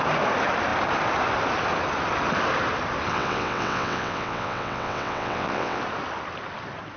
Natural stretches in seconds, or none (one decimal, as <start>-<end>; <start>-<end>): 0.0-3.1; 5.8-7.0